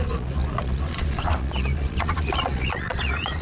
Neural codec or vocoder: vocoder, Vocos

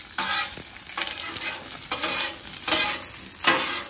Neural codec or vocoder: none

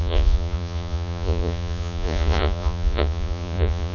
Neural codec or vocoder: vocoder, Vocos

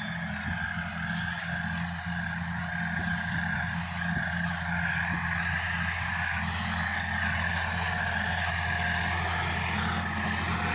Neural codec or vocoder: none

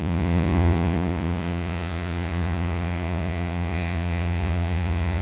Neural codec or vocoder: vocoder, Vocos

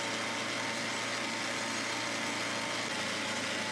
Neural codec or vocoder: none